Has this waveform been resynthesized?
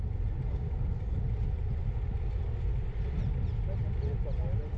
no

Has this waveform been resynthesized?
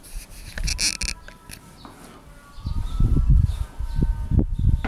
no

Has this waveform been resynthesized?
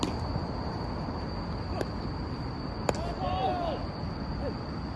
no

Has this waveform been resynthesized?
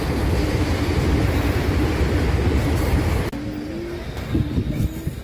no